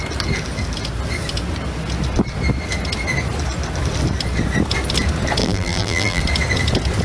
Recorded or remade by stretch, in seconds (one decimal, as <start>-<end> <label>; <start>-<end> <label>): 0.0-5.4 recorded; 5.4-6.2 remade; 6.2-7.0 recorded